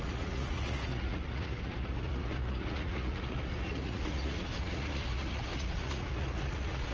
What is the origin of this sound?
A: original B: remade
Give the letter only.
B